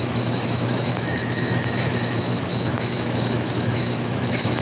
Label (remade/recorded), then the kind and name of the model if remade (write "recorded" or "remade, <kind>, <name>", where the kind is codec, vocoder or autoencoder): remade, autoencoder, DAC-VAE